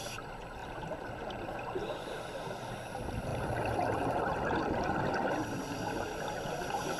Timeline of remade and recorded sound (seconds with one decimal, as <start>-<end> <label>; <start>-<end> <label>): 0.0-0.6 recorded; 0.6-1.4 remade; 1.4-3.3 recorded; 3.3-5.0 remade; 5.0-7.0 recorded